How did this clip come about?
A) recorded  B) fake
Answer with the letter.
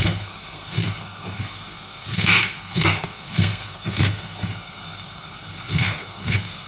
B